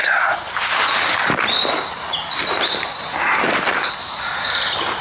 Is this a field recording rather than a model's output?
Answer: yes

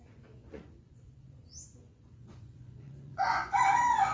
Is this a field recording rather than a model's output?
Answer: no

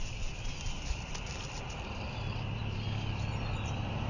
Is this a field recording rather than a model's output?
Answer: no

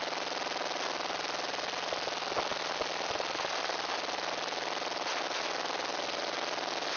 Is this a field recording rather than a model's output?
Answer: yes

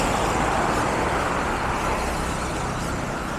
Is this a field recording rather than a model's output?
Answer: yes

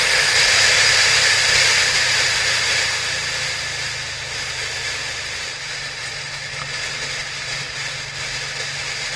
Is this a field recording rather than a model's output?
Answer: yes